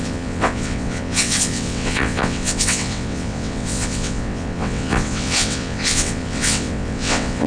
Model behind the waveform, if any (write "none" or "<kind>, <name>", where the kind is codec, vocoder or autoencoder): vocoder, WaveNeXt